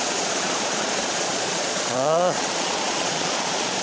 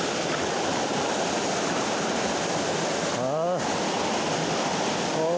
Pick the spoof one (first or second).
first